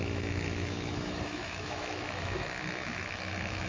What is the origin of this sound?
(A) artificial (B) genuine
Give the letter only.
A